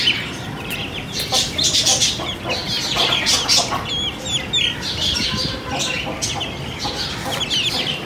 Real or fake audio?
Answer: real